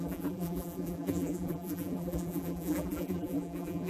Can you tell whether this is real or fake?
fake